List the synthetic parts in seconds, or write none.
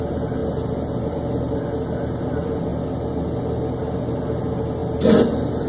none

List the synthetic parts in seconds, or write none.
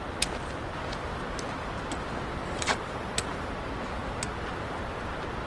2.3-3.5 (vocoder, BigVGAN v2)